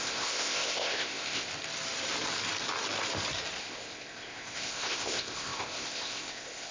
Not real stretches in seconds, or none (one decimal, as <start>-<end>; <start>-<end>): 0.0-1.5; 3.6-6.7